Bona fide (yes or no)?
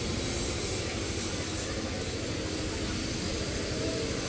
yes